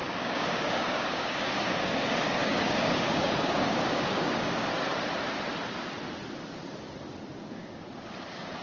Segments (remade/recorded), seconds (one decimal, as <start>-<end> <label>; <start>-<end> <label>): 0.0-4.7 remade; 4.7-7.4 recorded; 7.4-8.1 remade; 8.1-8.6 recorded